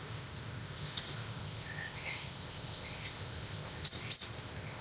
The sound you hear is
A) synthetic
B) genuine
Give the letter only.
A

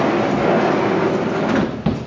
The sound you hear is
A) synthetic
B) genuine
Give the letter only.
B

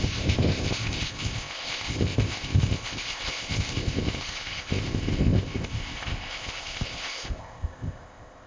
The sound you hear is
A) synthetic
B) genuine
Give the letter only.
A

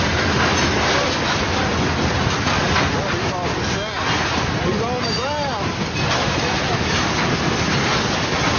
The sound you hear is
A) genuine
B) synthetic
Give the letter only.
A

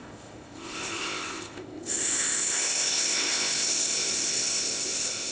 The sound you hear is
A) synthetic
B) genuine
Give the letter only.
A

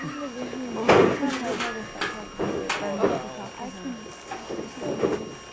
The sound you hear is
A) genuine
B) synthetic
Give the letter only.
A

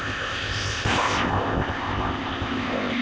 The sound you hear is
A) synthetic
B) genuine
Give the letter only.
A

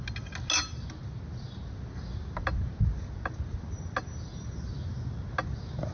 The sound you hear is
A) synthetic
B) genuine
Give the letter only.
B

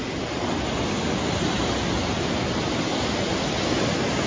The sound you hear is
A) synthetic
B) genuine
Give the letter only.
B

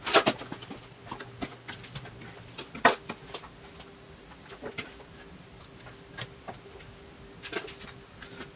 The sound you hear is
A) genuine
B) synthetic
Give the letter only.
A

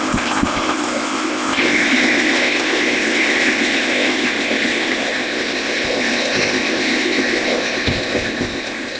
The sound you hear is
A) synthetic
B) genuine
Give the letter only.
A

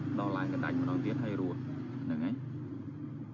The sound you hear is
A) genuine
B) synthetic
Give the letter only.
A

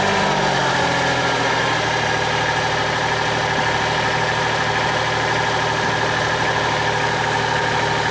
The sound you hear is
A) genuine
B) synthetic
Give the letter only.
A